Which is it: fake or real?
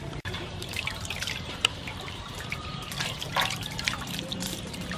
fake